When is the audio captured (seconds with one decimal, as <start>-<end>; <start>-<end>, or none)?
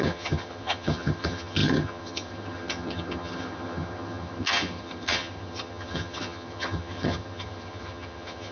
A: none